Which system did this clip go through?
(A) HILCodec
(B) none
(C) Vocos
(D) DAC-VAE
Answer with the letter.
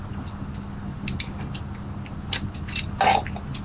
B